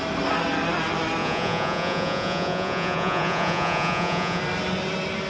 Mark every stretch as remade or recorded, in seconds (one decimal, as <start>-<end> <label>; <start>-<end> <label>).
0.0-1.2 recorded; 1.2-4.4 remade; 4.4-5.3 recorded